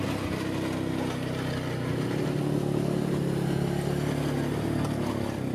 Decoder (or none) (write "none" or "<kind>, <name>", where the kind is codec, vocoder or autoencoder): none